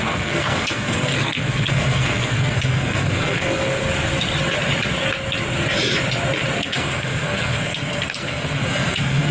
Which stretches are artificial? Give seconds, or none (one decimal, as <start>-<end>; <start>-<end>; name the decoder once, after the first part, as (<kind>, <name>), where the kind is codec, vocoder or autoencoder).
0.0-3.9 (codec, SNAC); 6.6-9.3